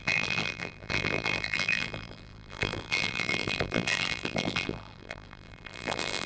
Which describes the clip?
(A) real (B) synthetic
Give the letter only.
B